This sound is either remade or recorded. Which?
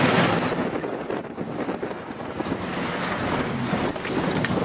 recorded